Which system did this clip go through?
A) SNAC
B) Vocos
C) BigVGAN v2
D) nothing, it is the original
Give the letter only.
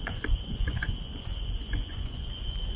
B